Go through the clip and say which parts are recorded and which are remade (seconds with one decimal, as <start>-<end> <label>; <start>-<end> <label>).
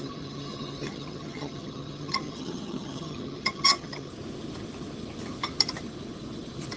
0.0-4.1 remade; 4.1-6.8 recorded